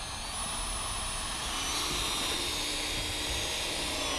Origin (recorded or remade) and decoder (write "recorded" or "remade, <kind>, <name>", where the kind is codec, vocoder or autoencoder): recorded